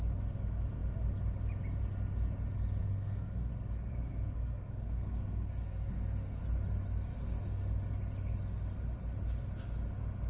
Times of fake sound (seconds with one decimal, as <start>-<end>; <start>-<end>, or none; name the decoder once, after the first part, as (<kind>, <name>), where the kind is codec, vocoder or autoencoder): 2.8-3.5 (codec, SNAC); 3.9-6.4; 7.1-7.7